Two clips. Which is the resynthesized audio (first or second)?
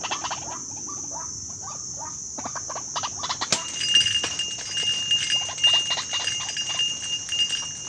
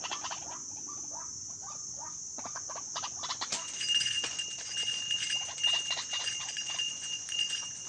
second